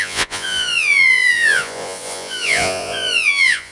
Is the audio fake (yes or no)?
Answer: yes